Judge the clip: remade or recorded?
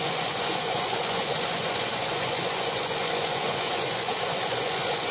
remade